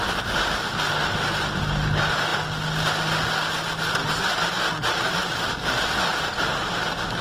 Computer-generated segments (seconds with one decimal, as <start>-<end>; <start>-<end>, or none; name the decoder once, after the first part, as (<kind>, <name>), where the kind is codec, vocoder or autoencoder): none